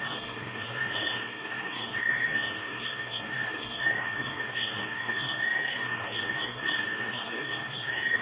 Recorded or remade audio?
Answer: remade